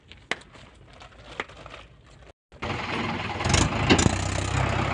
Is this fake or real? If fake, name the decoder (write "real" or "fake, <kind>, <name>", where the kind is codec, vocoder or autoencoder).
real